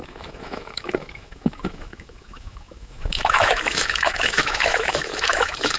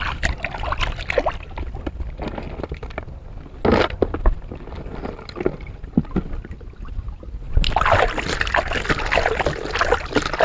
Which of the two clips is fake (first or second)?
first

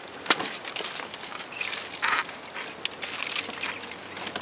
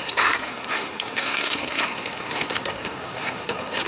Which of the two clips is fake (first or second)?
second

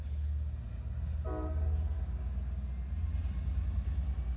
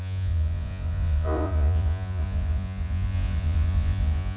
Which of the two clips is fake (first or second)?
second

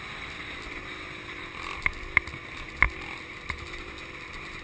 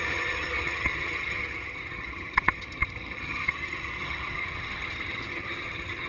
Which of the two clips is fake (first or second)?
second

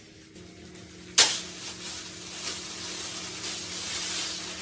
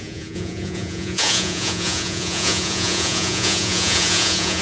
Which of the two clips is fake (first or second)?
second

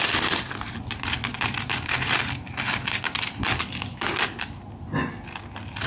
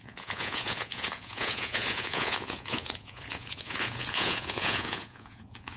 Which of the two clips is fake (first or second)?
second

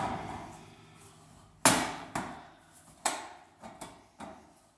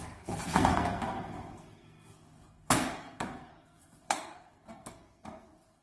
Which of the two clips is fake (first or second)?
second